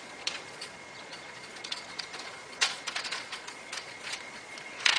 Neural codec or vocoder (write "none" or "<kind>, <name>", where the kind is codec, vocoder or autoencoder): vocoder, Vocos